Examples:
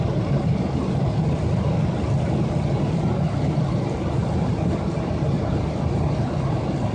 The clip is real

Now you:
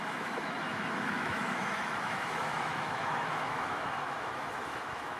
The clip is fake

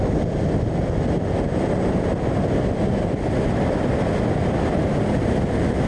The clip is real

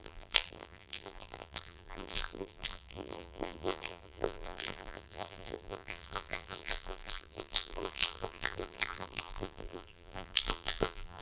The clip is fake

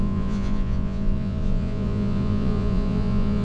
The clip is fake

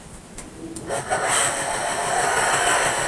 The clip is real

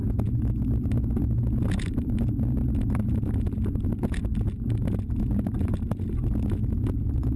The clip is real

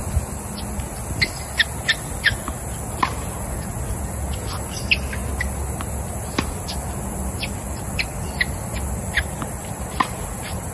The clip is real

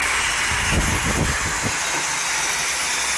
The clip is real